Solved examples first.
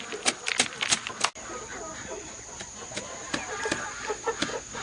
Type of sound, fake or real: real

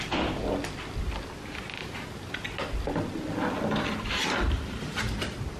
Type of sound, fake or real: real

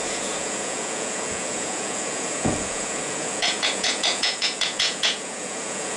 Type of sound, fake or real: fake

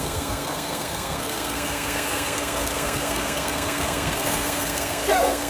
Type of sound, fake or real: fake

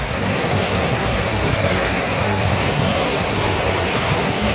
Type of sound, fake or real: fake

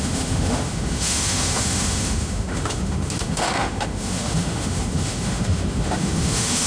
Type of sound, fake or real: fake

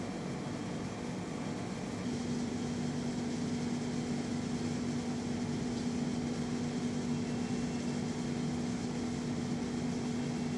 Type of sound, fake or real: real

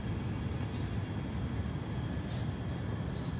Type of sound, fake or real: real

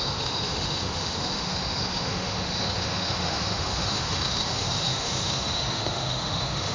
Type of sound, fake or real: fake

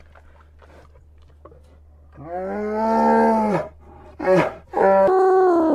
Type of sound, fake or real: real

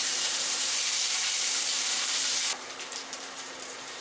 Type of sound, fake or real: fake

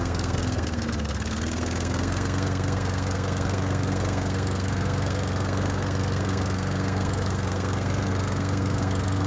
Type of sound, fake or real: fake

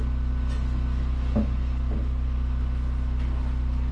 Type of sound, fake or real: real